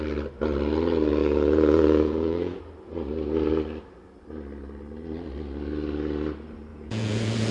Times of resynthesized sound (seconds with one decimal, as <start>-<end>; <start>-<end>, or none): 1.2-2.6; 6.7-7.5